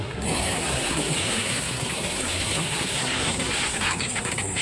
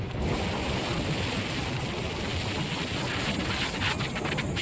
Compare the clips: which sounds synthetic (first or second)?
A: first